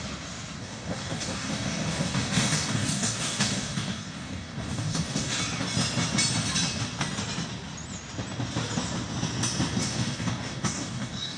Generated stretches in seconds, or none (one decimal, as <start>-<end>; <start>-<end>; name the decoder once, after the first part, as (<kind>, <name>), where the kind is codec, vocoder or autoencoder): 0.6-5.4 (codec, DAC); 9.8-11.4